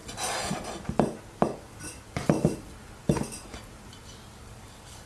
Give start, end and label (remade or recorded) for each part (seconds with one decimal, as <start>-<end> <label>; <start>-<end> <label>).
0.0-1.2 recorded; 1.2-5.1 remade